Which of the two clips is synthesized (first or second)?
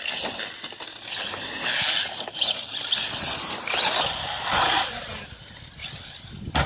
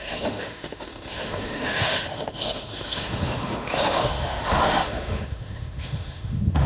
second